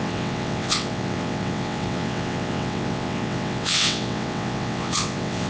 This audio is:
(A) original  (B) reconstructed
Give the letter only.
B